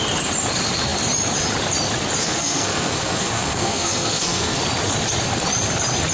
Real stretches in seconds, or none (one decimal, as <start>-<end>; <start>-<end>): 0.0-2.2; 4.6-6.1